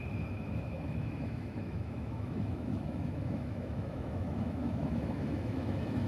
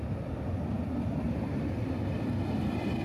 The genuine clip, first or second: second